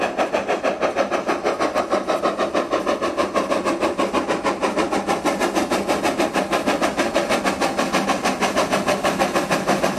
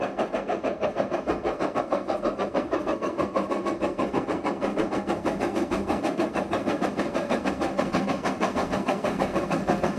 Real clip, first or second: first